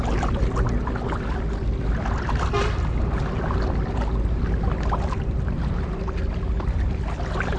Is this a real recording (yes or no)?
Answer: yes